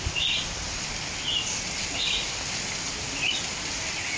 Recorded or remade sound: recorded